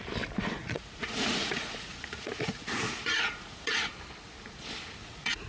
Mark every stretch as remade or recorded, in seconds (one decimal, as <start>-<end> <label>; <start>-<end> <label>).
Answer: 0.0-0.6 recorded; 0.6-3.9 remade; 3.9-5.0 recorded; 5.0-5.5 remade